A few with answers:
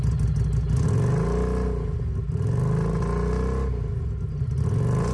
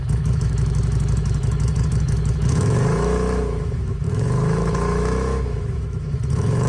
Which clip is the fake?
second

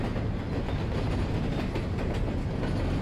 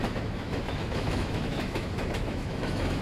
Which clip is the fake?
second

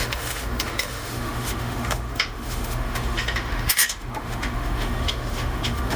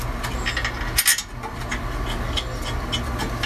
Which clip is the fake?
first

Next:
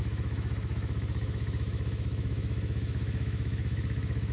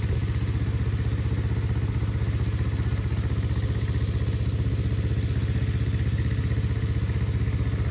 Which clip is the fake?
first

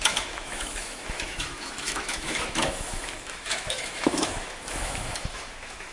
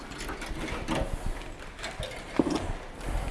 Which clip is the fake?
first